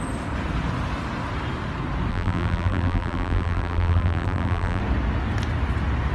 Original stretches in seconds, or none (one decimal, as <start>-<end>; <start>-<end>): 0.0-2.1; 4.8-6.1